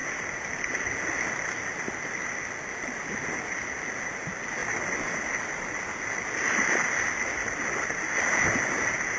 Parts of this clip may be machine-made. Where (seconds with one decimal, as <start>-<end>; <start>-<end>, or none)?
none